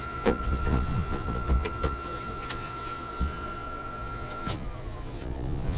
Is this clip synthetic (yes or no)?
yes